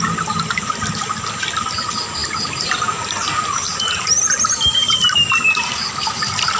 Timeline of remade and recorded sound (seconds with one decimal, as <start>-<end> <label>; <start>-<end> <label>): 0.0-6.6 recorded